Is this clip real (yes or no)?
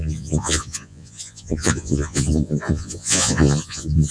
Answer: no